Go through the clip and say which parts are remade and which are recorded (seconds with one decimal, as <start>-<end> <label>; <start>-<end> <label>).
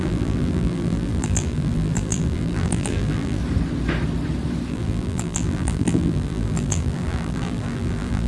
0.0-3.4 remade; 3.4-4.7 recorded; 4.7-8.3 remade